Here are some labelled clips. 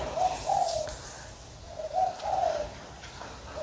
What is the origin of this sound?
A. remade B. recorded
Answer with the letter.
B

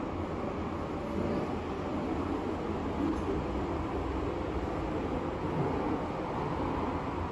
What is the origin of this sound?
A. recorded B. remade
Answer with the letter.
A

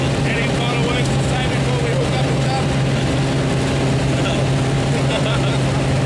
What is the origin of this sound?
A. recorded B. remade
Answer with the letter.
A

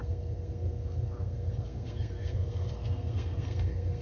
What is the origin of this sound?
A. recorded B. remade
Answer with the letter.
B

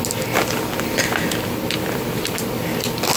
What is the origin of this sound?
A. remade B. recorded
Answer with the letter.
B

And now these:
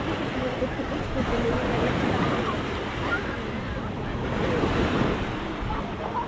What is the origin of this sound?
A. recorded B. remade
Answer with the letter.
A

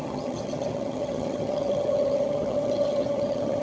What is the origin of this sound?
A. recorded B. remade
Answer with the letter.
B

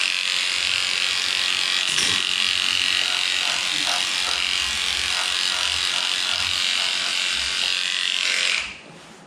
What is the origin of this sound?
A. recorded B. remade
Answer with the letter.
A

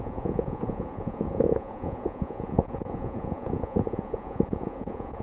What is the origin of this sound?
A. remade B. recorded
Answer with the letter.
A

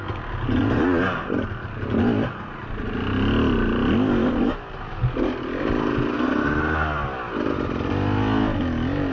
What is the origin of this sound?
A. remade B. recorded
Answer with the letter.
B